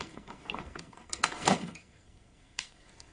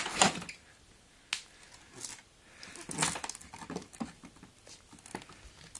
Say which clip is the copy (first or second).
first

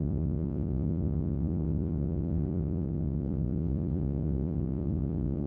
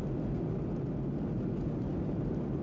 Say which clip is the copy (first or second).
first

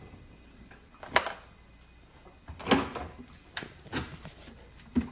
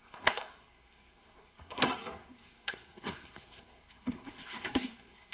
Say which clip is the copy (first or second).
second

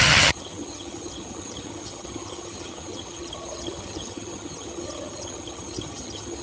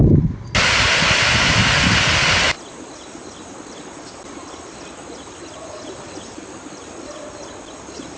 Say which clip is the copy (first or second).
first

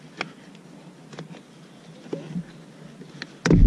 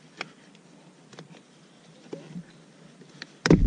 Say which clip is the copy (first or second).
second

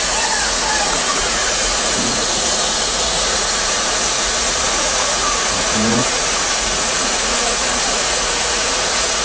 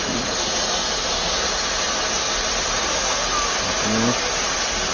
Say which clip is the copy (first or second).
first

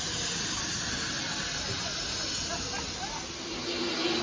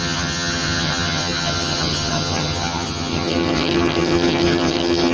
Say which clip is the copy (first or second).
second